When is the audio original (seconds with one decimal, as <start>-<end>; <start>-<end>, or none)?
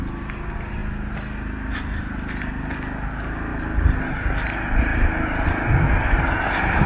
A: 0.0-6.9